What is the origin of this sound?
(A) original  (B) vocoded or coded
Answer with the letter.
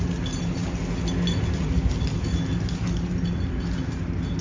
A